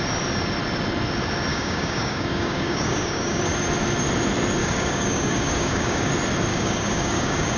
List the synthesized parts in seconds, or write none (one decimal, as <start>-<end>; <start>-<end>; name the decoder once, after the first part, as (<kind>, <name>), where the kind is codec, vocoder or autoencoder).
1.5-3.4 (codec, DAC); 4.6-6.1; 6.5-7.6